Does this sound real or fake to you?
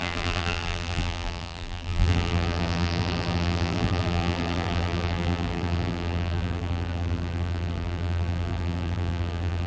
fake